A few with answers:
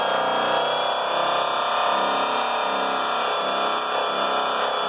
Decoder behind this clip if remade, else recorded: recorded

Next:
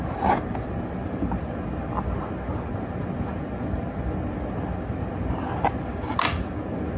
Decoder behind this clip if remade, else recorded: recorded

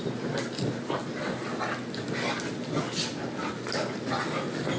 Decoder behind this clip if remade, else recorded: recorded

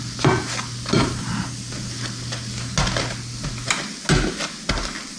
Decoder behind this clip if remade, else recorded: recorded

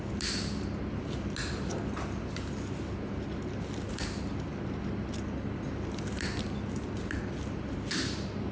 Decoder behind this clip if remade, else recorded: recorded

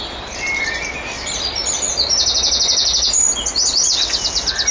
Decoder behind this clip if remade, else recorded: recorded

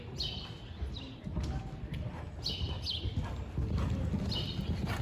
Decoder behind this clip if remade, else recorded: recorded